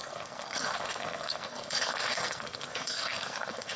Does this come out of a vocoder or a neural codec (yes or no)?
yes